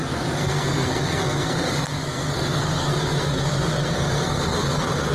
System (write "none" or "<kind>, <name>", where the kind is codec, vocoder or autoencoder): codec, SNAC